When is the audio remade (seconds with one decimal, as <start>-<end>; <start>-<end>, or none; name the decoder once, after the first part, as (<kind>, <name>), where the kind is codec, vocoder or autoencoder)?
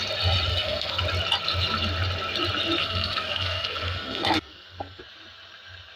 0.5-1.0 (codec, SNAC); 2.8-5.0